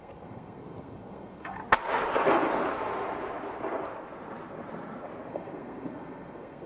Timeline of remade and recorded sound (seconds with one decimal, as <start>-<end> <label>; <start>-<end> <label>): 0.0-1.6 remade; 1.6-5.3 recorded; 5.3-6.7 remade